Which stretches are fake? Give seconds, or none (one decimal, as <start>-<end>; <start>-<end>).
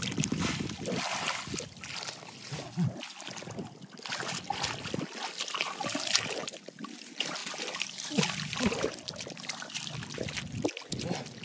none